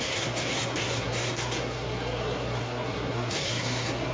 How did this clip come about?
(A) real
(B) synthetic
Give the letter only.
B